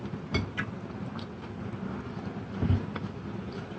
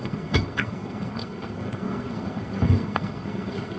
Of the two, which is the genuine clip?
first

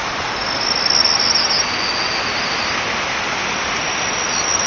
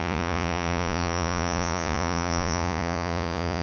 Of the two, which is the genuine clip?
first